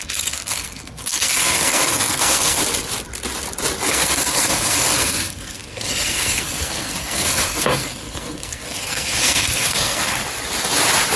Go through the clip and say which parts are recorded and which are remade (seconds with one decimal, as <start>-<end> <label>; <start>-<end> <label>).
0.0-2.6 remade; 2.6-3.9 recorded; 3.9-10.2 remade; 10.2-11.2 recorded